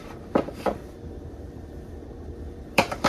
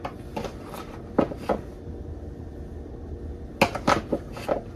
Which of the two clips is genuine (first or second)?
second